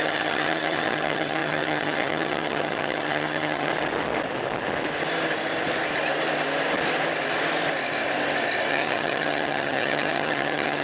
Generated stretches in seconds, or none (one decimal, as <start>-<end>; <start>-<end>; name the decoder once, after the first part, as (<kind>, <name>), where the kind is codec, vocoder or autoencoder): 0.0-3.7 (vocoder, HiFi-GAN); 8.7-10.8